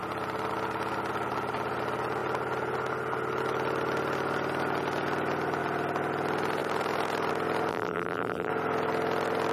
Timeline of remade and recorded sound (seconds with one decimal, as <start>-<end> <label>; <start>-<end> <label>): 0.0-7.7 recorded; 7.7-8.5 remade; 8.5-9.5 recorded